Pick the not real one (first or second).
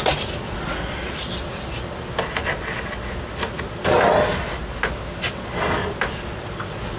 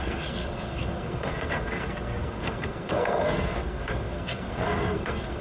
second